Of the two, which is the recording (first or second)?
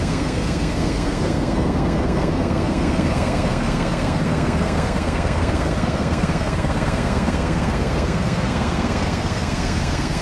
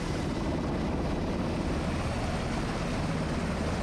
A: second